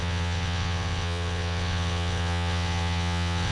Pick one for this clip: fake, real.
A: fake